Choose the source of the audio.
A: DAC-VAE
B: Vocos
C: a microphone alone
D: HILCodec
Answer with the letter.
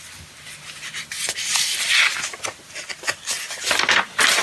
C